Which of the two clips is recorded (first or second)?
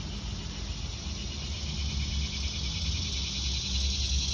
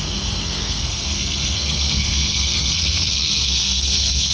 first